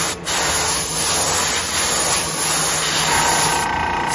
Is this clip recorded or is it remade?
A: recorded